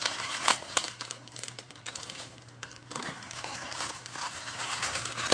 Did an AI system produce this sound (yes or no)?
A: yes